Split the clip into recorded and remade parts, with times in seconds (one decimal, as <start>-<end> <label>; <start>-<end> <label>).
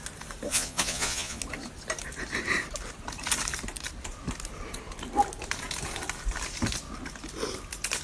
0.0-0.5 recorded; 0.5-1.4 remade; 1.4-8.0 recorded